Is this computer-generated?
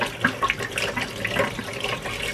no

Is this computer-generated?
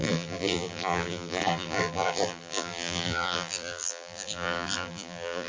yes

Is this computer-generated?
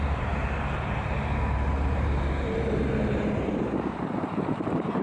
yes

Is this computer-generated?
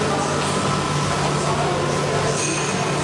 no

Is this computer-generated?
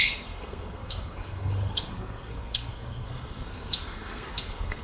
yes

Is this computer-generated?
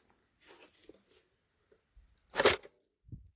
no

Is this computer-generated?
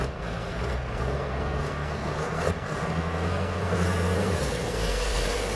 yes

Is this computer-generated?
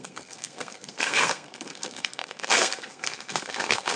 yes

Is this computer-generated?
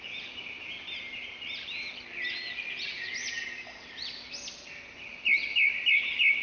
no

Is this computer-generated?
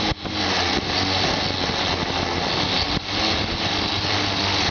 no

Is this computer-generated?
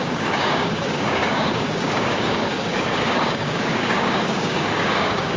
yes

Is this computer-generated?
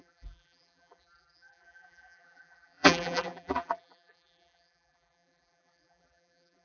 yes